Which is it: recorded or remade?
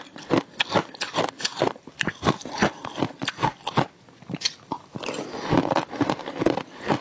recorded